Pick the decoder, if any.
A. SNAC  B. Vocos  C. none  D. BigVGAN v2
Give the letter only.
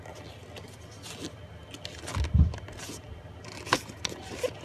C